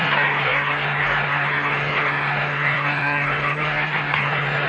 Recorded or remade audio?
remade